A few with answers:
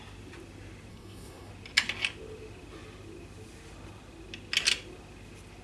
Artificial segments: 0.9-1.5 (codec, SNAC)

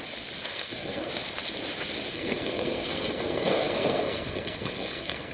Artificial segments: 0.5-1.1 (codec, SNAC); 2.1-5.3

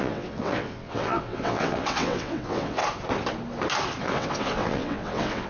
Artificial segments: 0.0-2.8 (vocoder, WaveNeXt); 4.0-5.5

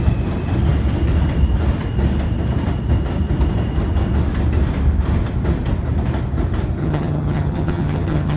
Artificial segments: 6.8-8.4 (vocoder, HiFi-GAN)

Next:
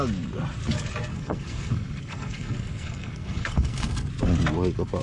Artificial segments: 1.1-4.1 (codec, SNAC)